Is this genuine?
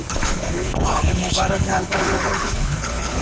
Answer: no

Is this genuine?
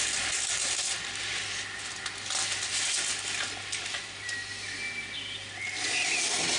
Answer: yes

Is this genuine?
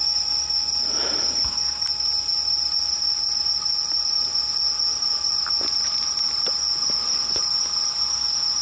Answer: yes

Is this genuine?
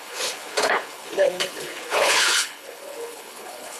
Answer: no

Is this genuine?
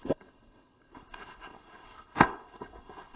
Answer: no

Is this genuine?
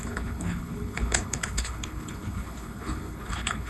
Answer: no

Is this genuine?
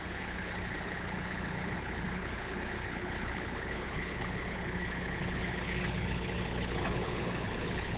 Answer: no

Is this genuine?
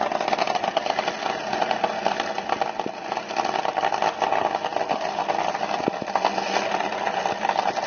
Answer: yes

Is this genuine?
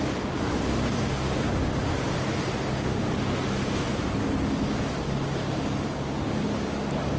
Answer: yes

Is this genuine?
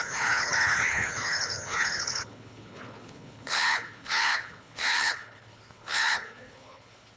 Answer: no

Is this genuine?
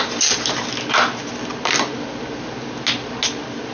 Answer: yes